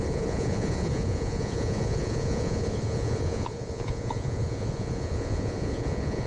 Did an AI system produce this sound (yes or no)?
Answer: yes